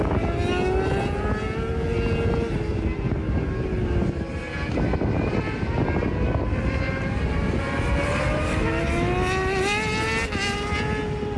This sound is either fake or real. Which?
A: real